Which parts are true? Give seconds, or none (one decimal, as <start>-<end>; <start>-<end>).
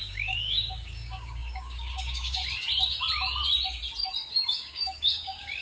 2.4-4.3